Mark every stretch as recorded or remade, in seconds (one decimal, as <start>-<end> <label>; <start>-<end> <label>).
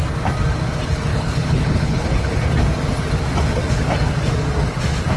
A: 0.0-1.1 recorded; 1.1-2.3 remade; 2.3-5.2 recorded